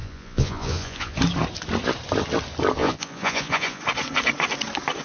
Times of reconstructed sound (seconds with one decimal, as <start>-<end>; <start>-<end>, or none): 0.0-1.2; 2.8-3.8

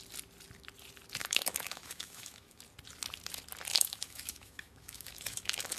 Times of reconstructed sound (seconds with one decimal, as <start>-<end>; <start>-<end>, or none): 1.2-2.6; 3.7-5.8

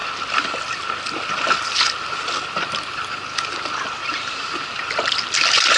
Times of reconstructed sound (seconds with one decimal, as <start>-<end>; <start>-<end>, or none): 4.0-4.9

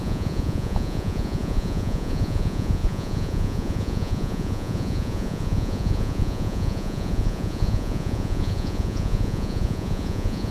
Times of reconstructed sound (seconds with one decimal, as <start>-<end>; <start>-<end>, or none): 0.0-10.5